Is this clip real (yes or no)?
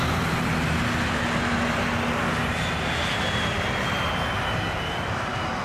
yes